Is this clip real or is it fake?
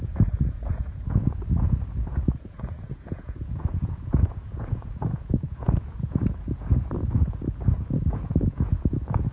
fake